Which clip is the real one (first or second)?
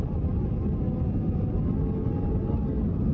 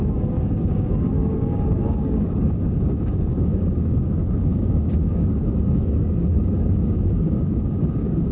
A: first